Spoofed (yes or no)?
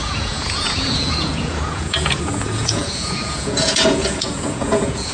yes